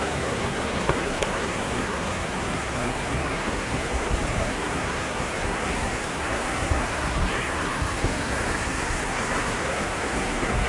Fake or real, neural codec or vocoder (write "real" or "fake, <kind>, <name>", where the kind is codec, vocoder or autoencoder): fake, codec, SNAC